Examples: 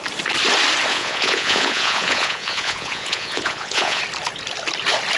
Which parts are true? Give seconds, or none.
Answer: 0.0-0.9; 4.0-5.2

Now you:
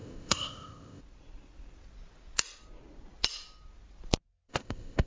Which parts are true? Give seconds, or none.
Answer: 1.0-4.5

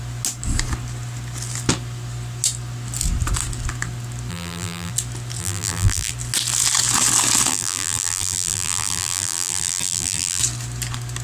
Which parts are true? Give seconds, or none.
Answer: 0.0-4.3; 4.9-5.4; 6.1-7.5; 10.4-11.2

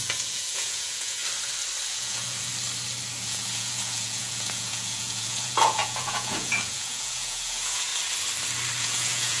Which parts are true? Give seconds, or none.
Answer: 1.2-1.9; 2.5-3.2; 7.9-8.8

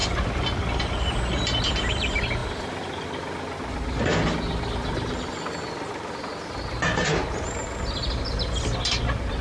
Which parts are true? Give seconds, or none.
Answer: 0.0-9.4